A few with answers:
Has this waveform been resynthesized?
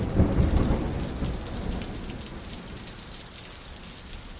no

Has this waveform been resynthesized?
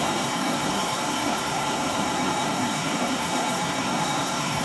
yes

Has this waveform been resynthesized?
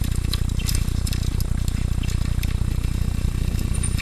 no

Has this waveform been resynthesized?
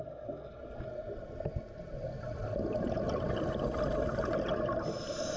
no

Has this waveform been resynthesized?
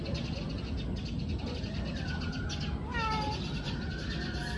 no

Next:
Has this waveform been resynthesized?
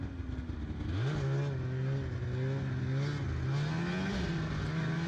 no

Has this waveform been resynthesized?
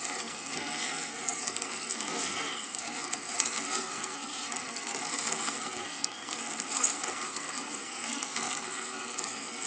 yes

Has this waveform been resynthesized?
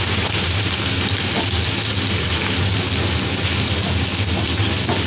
no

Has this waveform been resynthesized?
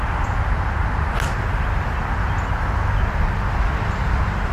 no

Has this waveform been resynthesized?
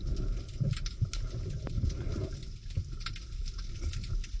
no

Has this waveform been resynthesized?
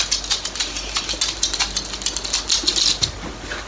no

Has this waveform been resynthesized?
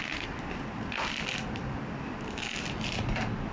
no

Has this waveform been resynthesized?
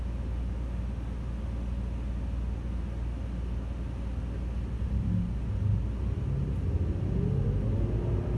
no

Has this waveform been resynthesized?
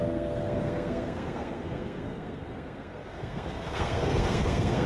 yes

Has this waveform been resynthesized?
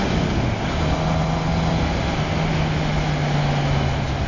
no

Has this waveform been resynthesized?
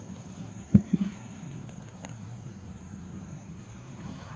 yes